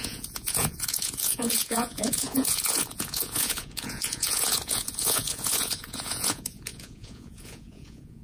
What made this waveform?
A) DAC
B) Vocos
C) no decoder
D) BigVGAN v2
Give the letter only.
B